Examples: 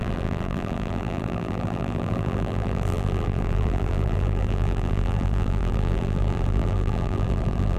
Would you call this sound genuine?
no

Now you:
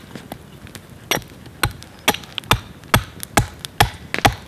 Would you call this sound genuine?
yes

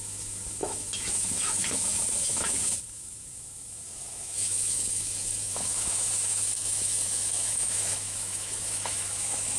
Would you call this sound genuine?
no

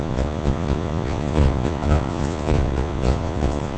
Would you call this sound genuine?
no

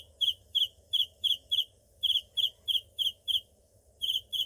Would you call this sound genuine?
no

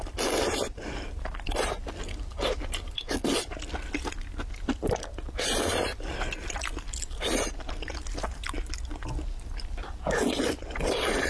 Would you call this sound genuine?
yes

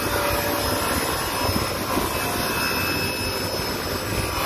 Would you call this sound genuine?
yes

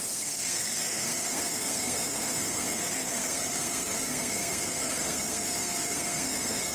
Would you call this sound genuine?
no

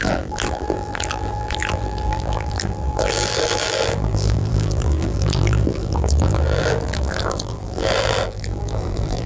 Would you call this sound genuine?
no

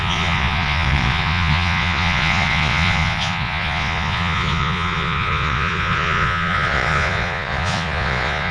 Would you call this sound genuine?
no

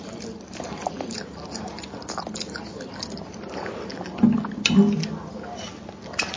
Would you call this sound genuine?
yes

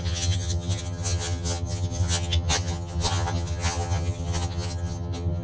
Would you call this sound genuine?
no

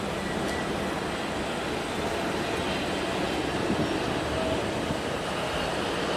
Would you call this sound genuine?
yes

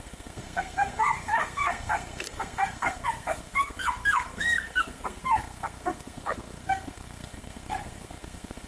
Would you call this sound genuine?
no